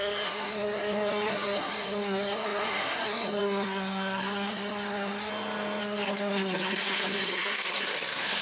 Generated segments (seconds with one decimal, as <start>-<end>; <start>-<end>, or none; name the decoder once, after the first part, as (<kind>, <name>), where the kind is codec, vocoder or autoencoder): 0.0-5.3 (codec, SNAC); 5.8-8.4